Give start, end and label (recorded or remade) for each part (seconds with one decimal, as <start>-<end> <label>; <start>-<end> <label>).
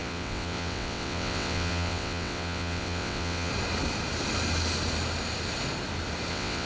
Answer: 0.0-3.5 remade; 3.5-6.3 recorded; 6.3-6.7 remade